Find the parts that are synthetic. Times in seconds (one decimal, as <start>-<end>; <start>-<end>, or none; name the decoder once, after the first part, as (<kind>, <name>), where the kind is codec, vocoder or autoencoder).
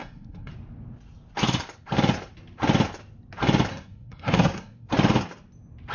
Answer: 0.0-0.5 (codec, SNAC); 3.7-4.9